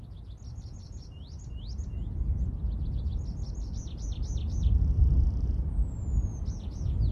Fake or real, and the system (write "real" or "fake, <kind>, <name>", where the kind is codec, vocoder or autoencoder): real